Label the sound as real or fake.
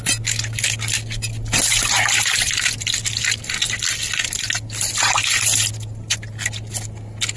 real